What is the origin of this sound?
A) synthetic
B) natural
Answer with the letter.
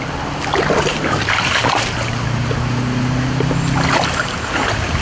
B